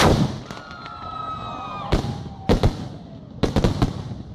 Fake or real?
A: real